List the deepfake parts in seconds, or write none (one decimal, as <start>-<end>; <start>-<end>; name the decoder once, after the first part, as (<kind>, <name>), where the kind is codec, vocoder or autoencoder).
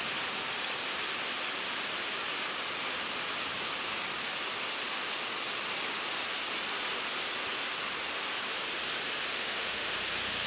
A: 9.3-9.9 (autoencoder, DAC-VAE)